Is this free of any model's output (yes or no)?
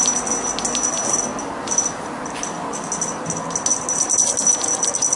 yes